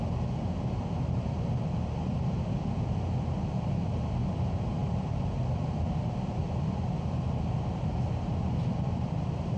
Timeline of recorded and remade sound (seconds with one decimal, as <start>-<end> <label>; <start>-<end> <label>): 0.0-9.6 recorded